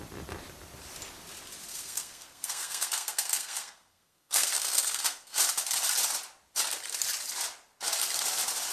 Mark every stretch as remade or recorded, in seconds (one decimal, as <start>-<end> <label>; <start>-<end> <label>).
0.0-1.7 recorded; 1.7-5.4 remade; 5.4-8.7 recorded